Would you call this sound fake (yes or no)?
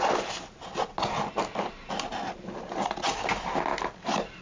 no